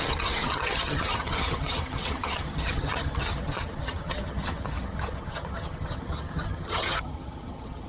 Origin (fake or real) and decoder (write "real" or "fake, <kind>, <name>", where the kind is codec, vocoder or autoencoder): fake, vocoder, HiFi-GAN